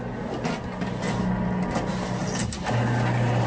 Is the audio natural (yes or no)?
yes